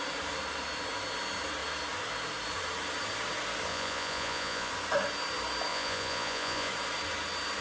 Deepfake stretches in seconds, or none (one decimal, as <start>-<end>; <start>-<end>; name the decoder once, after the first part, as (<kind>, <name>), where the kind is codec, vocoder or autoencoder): 3.7-4.7 (vocoder, Vocos); 5.7-6.7